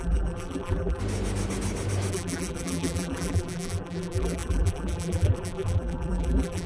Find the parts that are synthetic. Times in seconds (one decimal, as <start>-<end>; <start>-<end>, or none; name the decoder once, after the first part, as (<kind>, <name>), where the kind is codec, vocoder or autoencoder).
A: 0.0-1.0 (vocoder, BigVGAN v2); 2.1-6.7